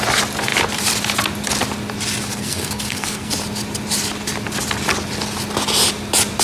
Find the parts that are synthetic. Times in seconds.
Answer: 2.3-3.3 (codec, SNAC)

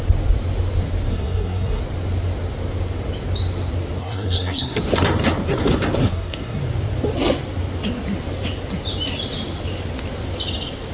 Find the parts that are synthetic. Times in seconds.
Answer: 1.1-1.8 (codec, SNAC); 4.0-4.8; 6.0-6.6

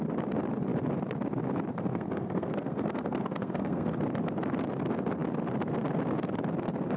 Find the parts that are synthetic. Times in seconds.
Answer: 1.9-4.0 (codec, SNAC)

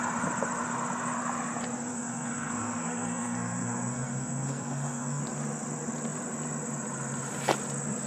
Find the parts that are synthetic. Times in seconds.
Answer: 1.9-5.2 (codec, SNAC)

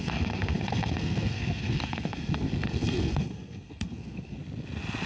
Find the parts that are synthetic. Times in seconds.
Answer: 0.0-4.4 (codec, SNAC)

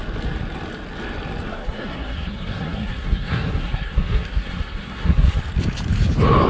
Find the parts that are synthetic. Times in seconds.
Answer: 1.5-5.4 (codec, SNAC)